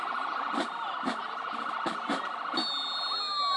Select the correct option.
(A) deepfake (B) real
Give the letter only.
B